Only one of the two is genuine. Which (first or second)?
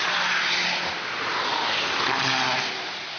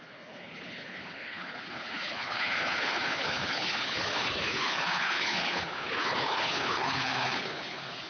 first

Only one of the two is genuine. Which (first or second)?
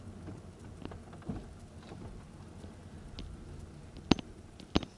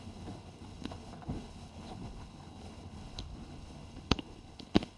first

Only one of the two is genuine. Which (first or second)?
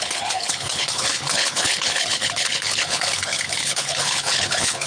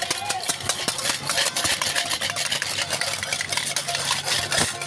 second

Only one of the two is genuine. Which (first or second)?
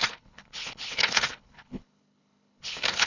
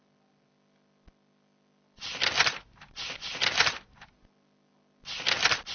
second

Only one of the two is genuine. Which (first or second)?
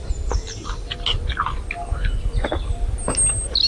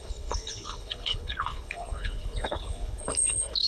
first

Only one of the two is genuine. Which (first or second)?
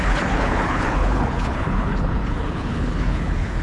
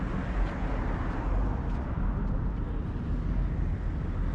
second